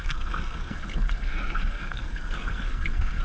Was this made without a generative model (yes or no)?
no